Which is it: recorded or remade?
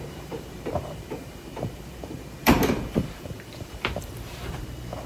remade